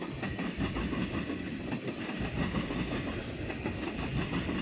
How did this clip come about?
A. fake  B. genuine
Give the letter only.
B